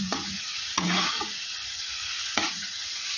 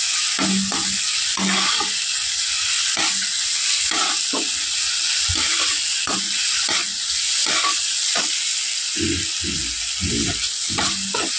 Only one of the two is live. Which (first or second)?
second